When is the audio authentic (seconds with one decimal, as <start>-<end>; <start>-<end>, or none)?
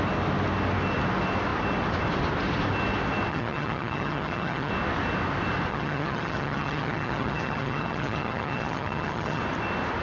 0.0-3.3; 4.7-5.7; 9.4-10.0